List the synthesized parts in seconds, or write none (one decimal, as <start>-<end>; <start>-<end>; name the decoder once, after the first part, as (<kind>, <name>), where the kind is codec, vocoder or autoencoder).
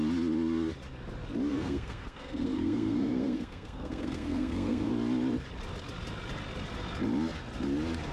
1.5-4.9 (codec, SNAC)